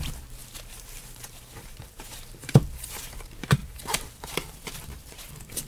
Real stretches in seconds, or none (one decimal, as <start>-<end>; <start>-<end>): none